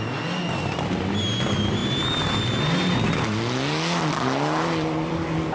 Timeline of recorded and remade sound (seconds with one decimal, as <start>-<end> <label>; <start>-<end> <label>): 0.0-5.5 recorded